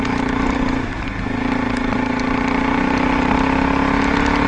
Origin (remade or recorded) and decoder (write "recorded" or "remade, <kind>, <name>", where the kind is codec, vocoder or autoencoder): recorded